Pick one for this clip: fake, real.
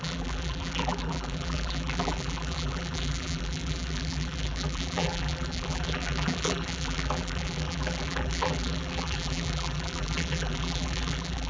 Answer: fake